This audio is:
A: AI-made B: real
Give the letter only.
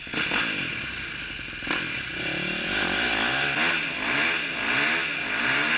B